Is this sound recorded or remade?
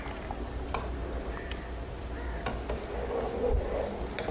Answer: recorded